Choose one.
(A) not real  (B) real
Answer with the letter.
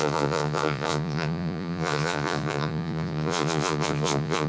A